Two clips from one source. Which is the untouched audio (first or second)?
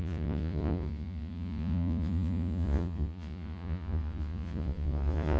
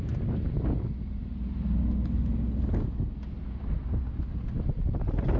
second